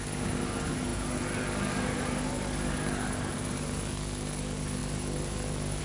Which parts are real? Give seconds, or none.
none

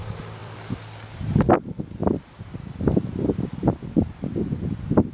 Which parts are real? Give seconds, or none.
0.0-0.4; 1.5-5.1